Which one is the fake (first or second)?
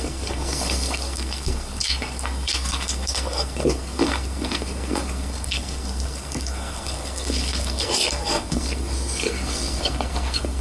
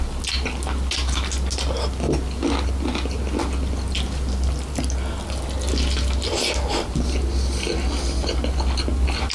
first